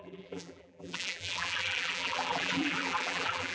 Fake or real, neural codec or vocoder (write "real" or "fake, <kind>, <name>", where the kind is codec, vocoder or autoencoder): fake, vocoder, BigVGAN v2